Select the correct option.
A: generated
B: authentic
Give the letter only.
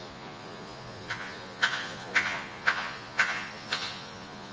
A